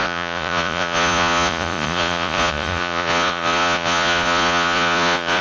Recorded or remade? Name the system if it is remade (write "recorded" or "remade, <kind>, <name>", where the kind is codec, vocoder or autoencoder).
remade, vocoder, Vocos